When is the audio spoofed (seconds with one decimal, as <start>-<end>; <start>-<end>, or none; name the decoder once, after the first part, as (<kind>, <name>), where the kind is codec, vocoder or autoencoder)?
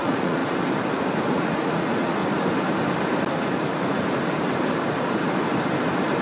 0.0-0.4 (vocoder, Vocos); 1.3-2.2